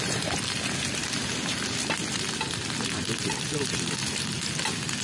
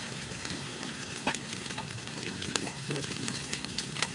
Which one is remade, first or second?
second